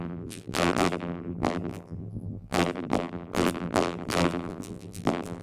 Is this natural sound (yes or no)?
no